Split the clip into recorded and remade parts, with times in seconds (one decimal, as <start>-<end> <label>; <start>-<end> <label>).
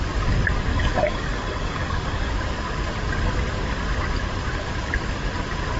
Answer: 0.0-0.7 recorded; 0.7-2.3 remade; 2.3-5.8 recorded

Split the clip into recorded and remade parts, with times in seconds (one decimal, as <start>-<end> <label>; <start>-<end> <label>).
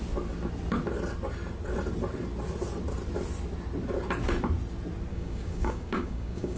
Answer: 0.0-5.1 recorded; 5.1-6.6 remade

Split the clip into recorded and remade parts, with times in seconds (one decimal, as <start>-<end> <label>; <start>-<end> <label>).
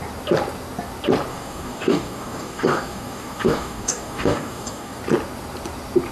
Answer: 0.0-1.3 recorded; 1.3-5.0 remade; 5.0-6.1 recorded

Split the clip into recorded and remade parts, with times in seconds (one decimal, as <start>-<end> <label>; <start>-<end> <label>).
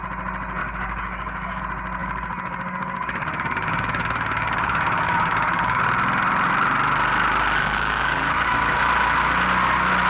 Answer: 0.0-0.6 recorded; 0.6-1.6 remade; 1.6-2.0 recorded; 2.0-5.8 remade; 5.8-7.6 recorded; 7.6-8.8 remade; 8.8-10.1 recorded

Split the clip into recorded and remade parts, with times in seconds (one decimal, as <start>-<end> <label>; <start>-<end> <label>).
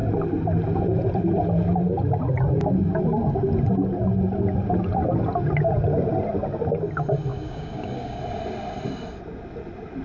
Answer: 0.0-7.3 recorded; 7.3-8.2 remade; 8.2-10.0 recorded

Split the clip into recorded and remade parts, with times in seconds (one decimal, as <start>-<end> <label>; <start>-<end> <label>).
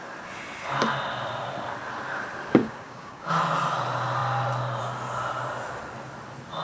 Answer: 0.0-2.6 recorded; 2.6-3.3 remade; 3.3-6.6 recorded